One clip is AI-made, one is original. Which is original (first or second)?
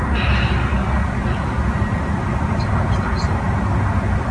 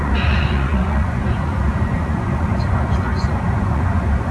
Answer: first